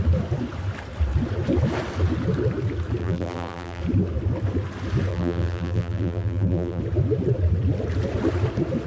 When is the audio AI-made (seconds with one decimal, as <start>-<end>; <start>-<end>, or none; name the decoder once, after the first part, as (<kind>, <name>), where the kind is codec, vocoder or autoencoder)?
3.0-3.8 (vocoder, BigVGAN v2); 5.1-6.8